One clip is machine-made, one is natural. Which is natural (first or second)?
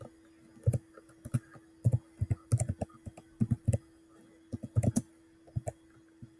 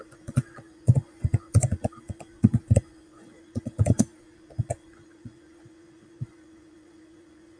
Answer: first